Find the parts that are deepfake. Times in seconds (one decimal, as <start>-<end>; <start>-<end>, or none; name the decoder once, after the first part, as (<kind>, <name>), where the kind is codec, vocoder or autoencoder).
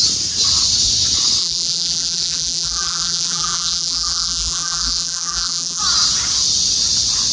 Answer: 1.4-5.8 (vocoder, BigVGAN v2)